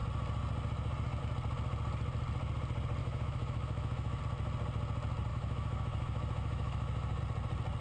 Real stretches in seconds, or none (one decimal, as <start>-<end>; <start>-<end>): 0.0-3.0; 4.2-5.3; 7.2-7.8